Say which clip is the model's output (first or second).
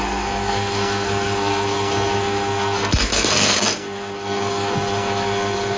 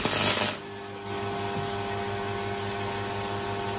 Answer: first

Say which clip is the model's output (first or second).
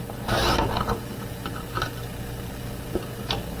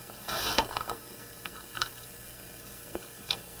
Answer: second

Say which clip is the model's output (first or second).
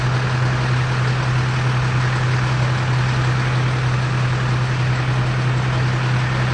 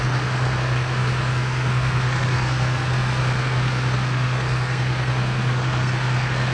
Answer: second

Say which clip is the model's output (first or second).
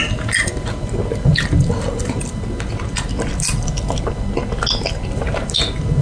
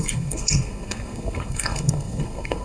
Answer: second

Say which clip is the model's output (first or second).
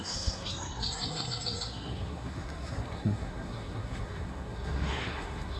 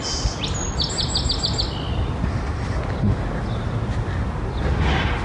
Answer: first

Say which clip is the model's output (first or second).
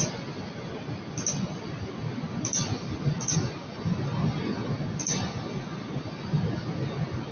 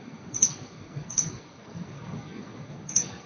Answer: second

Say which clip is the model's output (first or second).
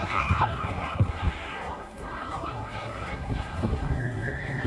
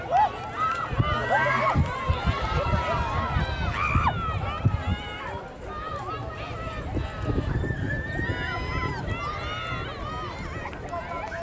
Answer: first